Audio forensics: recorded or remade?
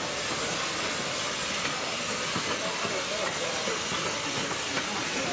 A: recorded